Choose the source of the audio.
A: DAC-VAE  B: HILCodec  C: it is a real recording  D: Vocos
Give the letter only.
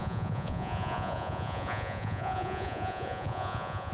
D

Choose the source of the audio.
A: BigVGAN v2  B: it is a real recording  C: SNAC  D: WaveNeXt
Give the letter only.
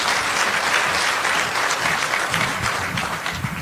A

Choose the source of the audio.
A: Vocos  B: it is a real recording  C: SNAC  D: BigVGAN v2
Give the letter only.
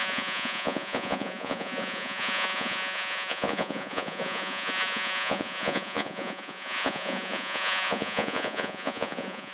A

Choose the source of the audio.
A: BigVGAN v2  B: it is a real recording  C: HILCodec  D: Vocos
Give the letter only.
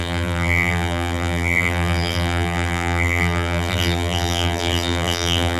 A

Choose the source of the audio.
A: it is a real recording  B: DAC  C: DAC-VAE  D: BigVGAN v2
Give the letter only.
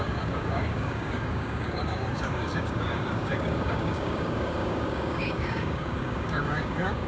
B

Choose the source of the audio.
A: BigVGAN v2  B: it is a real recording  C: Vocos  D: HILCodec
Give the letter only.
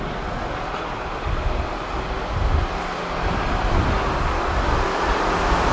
B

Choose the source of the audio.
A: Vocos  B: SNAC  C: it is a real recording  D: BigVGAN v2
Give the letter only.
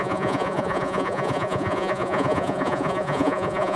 A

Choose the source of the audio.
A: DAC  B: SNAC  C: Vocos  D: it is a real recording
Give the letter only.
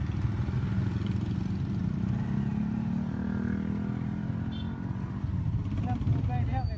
D